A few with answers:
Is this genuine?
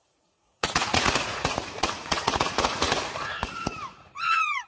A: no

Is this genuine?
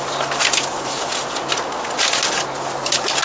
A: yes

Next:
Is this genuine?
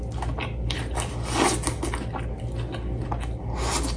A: yes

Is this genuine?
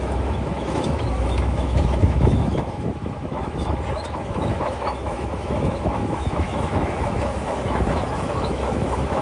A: no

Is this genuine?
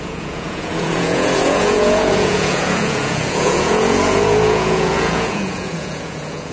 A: no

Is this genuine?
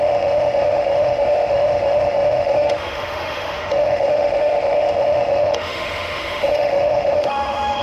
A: no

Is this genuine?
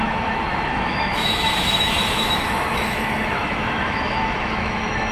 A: no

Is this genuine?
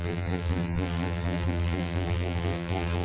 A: no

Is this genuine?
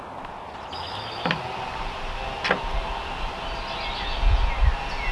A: yes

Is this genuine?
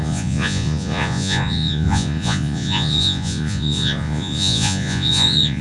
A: no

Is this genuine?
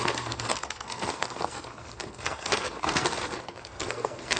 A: no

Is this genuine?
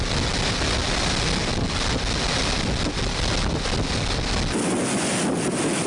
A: yes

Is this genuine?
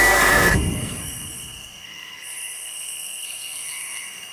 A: no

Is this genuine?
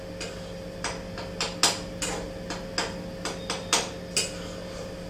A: yes